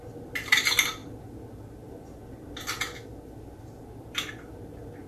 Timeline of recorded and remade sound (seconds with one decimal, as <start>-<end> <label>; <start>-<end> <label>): 0.0-5.1 recorded